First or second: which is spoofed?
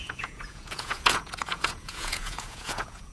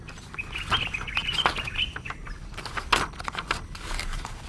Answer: first